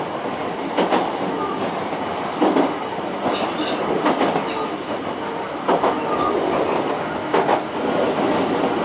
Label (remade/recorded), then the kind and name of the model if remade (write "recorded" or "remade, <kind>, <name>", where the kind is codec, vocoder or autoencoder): recorded